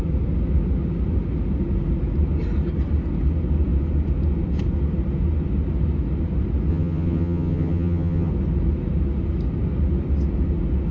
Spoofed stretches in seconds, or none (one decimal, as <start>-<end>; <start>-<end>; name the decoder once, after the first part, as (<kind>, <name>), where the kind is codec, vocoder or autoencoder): 6.7-8.3 (vocoder, HiFi-GAN)